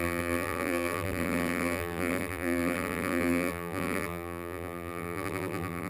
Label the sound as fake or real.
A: fake